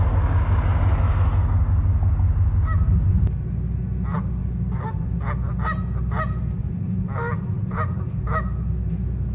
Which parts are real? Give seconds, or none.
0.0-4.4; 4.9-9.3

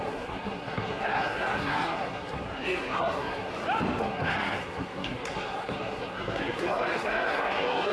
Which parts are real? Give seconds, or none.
3.5-4.0

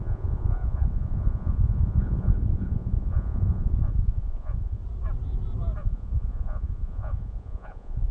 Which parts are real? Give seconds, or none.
4.8-5.8

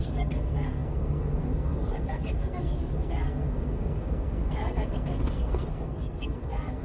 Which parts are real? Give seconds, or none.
none

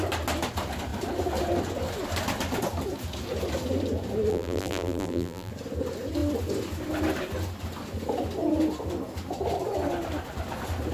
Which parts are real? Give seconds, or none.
0.0-4.3; 5.5-10.9

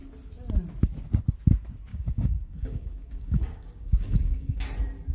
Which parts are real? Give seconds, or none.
0.0-1.9; 4.6-5.1